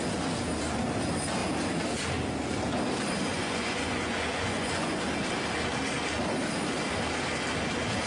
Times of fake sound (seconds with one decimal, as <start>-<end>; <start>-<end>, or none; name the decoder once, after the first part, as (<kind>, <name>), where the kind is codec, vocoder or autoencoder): 3.3-5.0 (vocoder, Vocos)